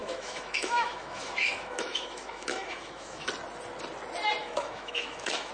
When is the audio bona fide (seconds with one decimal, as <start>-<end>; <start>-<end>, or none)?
3.3-4.4